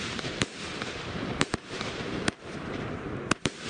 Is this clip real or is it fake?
fake